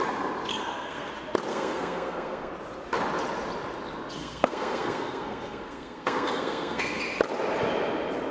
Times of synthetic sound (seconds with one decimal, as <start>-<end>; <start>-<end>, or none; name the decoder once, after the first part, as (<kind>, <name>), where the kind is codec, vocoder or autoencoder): 0.5-1.1 (codec, SNAC); 1.5-2.5; 4.2-7.0